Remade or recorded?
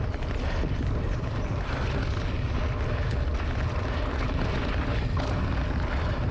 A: recorded